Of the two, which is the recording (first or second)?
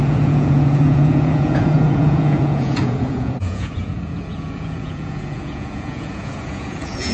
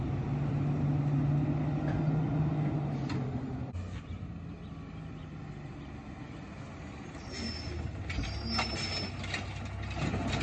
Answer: second